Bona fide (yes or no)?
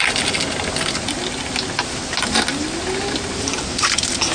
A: yes